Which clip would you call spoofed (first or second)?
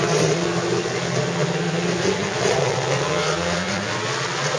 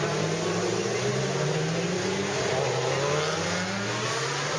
first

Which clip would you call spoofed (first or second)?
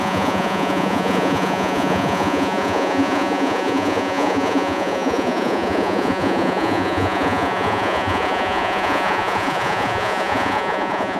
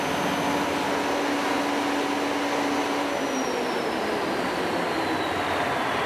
first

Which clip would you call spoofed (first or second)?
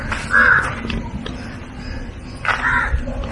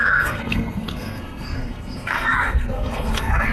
second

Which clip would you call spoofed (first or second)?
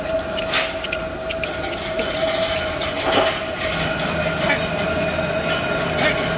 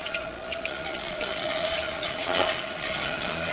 second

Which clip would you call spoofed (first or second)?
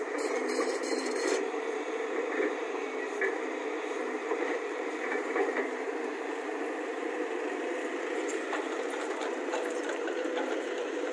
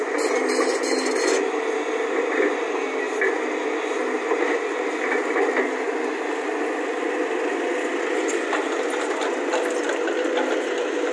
first